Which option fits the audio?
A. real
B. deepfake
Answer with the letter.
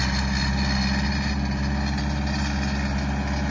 A